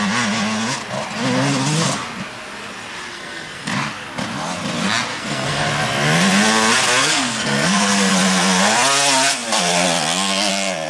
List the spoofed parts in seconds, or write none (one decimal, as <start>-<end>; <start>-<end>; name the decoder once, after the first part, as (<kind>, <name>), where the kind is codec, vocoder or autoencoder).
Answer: 3.1-3.7 (codec, SNAC); 5.1-5.7; 7.0-8.1